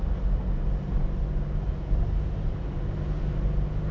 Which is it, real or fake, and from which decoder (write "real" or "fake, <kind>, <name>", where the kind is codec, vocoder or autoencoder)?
real